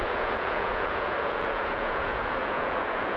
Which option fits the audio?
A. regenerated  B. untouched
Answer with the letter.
A